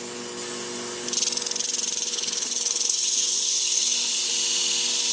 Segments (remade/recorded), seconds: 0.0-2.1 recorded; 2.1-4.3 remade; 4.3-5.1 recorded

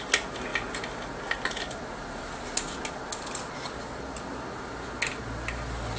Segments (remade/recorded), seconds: 0.0-6.0 recorded

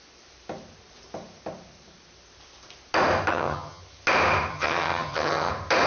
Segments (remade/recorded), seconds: 0.0-3.3 recorded; 3.3-3.8 remade; 3.8-4.5 recorded; 4.5-5.5 remade; 5.5-5.9 recorded